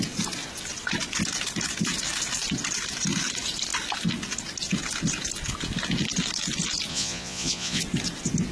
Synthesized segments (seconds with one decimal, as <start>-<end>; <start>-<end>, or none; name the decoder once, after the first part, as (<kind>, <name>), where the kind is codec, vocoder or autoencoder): 6.9-7.8 (vocoder, Vocos)